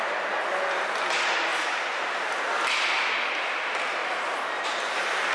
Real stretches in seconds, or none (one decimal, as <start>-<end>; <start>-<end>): 0.0-4.0